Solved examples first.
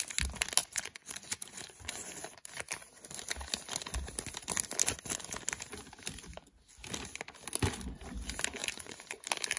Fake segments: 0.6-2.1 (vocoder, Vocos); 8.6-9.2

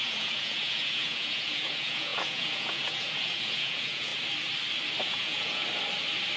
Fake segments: 0.0-4.1 (vocoder, Vocos); 5.1-5.6

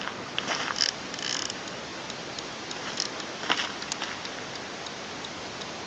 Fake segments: none

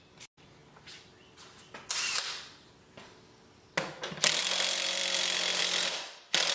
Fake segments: none

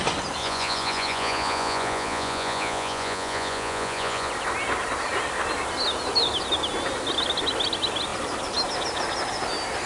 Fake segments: 0.4-4.3 (vocoder, Vocos)